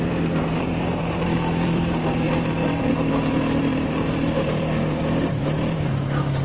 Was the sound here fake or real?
fake